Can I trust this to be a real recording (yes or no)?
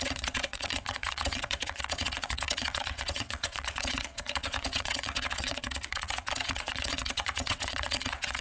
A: no